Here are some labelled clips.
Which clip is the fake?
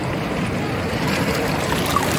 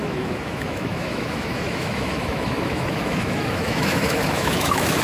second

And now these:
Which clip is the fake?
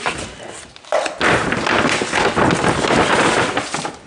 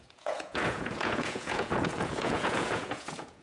second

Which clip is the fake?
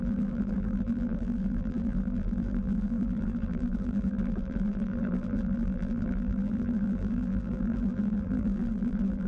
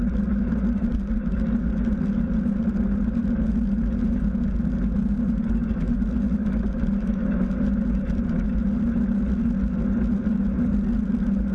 first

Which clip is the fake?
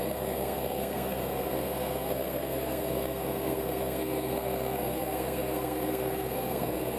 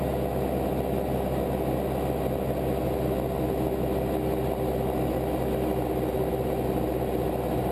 first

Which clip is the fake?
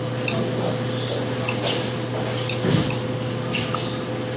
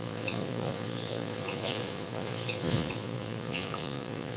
second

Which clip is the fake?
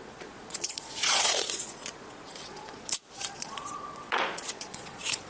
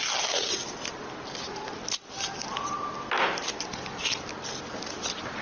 first